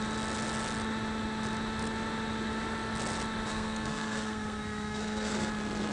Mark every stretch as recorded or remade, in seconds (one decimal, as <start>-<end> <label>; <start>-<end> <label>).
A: 0.0-3.5 recorded; 3.5-5.5 remade; 5.5-5.9 recorded